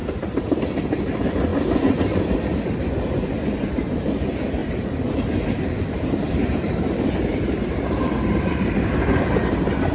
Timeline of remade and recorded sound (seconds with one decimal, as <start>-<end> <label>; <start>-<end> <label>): 0.0-0.6 remade; 0.6-4.6 recorded; 4.6-9.0 remade; 9.0-9.9 recorded